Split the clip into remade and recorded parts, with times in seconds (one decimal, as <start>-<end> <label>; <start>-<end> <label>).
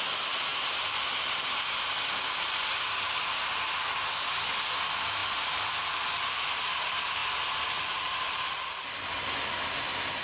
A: 0.0-10.2 recorded